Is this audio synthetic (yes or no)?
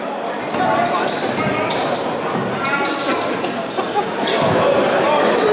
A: no